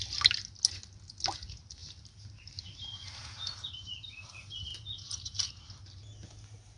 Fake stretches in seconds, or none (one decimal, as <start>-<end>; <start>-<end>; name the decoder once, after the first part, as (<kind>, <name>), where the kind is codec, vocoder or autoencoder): 1.8-2.6 (vocoder, BigVGAN v2)